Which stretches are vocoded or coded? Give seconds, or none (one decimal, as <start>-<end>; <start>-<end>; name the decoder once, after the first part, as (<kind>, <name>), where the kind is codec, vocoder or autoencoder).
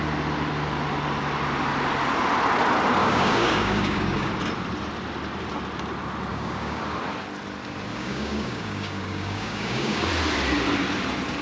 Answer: 3.0-4.3 (codec, DAC); 6.3-6.8; 7.9-10.1